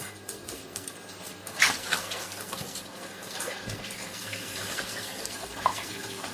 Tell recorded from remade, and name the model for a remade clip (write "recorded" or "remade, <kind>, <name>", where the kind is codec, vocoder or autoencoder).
remade, codec, SNAC